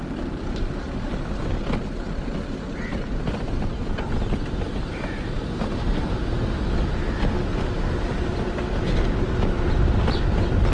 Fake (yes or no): no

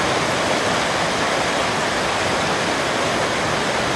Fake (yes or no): no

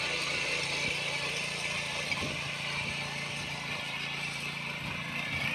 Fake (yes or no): no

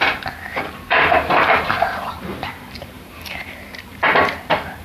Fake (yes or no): yes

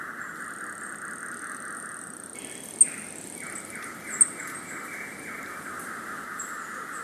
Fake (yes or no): no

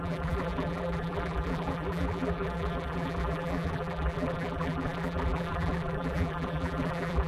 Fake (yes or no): yes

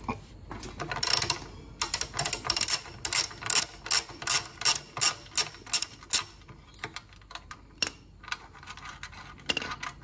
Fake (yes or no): no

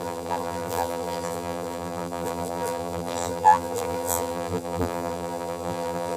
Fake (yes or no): yes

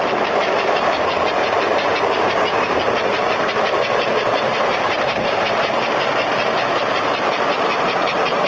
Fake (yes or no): yes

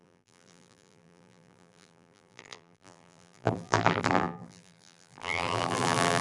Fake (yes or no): yes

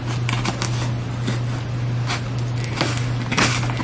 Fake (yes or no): no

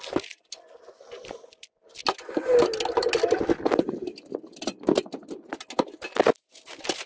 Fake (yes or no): no